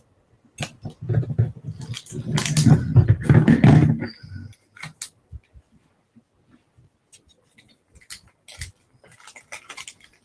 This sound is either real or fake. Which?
real